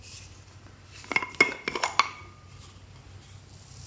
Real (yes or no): yes